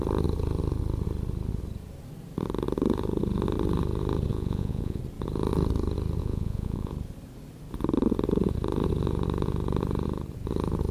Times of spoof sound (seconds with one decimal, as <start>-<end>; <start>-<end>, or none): 4.3-5.0; 6.2-6.9